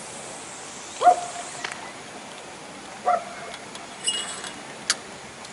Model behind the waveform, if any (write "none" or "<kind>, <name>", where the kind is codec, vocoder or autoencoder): none